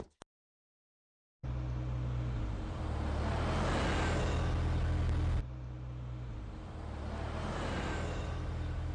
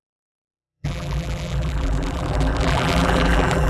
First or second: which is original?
first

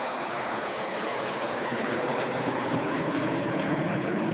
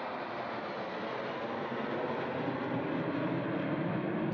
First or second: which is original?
second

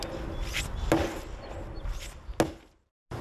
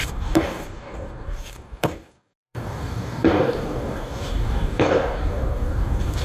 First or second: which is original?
first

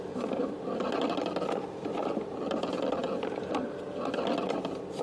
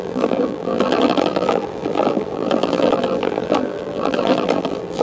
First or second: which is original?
first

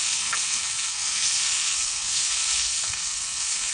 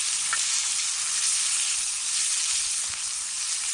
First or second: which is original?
second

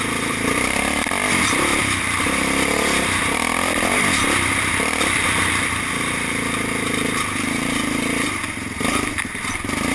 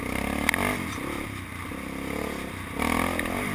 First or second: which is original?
second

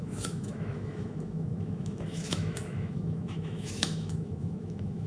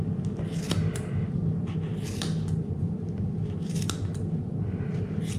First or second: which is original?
second